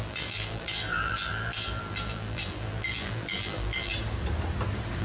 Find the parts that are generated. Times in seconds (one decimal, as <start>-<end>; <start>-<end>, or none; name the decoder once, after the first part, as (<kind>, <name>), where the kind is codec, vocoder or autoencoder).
0.0-3.9 (vocoder, BigVGAN v2)